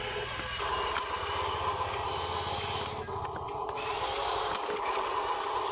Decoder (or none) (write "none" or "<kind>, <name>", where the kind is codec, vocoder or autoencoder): none